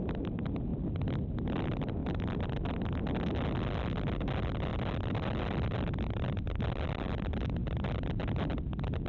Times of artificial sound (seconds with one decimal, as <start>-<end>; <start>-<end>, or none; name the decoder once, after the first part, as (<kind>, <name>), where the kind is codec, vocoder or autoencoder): 0.7-1.2 (vocoder, BigVGAN v2); 4.7-6.7; 7.6-8.3